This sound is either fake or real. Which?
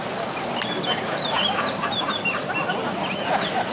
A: real